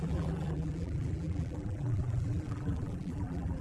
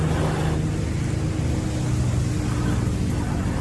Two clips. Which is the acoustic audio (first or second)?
second